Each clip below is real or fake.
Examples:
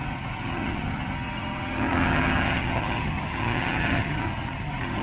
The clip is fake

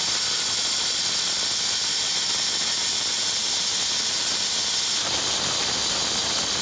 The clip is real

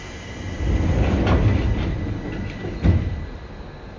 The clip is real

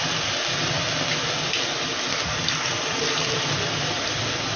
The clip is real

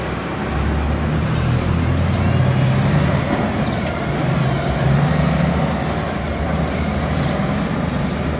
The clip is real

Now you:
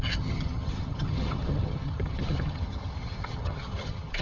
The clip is fake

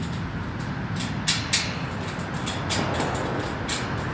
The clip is real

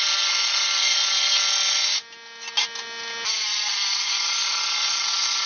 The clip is real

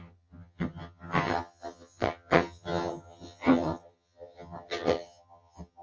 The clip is fake